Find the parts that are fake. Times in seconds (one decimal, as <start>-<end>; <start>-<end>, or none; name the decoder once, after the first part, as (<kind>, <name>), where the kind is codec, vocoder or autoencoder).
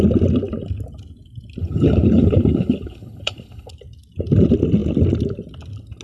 1.6-3.7 (codec, HILCodec)